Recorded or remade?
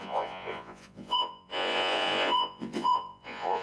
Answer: remade